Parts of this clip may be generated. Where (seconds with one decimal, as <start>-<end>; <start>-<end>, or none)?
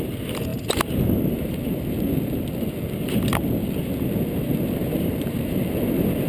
4.8-5.4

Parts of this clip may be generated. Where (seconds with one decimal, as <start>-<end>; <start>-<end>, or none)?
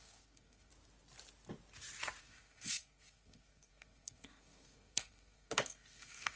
0.0-0.7; 2.2-6.4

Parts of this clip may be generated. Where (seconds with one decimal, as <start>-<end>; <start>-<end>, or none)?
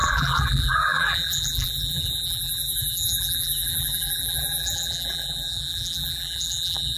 0.0-7.0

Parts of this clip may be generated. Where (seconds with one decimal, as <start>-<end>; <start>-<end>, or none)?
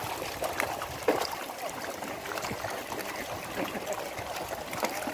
0.0-3.1